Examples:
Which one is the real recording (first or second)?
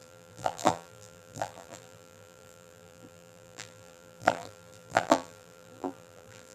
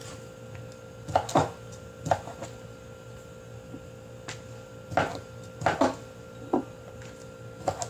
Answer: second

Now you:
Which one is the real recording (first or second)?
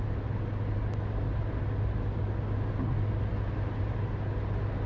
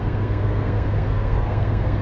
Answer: first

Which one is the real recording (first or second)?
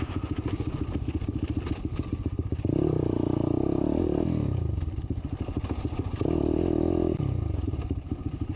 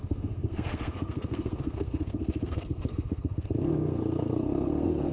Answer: first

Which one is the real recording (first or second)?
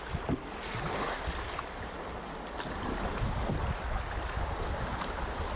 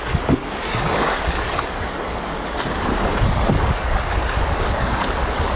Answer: first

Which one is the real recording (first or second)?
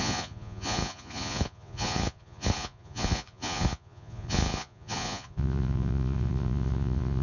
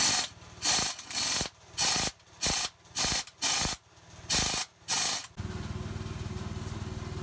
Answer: second